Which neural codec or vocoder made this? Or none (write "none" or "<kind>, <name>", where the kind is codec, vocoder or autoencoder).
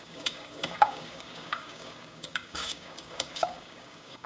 codec, DAC